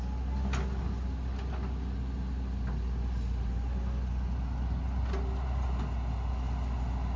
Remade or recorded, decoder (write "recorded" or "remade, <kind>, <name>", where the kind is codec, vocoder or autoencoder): recorded